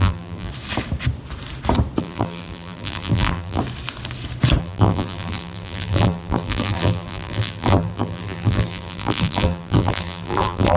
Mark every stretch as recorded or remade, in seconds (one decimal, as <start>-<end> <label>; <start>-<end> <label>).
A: 0.0-0.5 remade; 0.5-2.0 recorded; 2.0-3.6 remade; 3.6-4.6 recorded; 4.6-10.8 remade